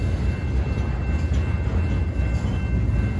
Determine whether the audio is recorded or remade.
recorded